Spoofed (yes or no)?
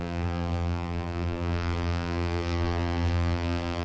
yes